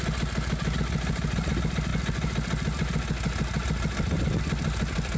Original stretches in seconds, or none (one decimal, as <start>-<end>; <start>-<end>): 0.0-5.2